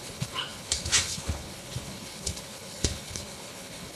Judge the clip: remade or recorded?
remade